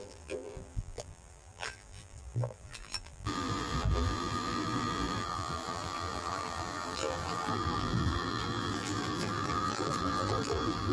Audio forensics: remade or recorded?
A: remade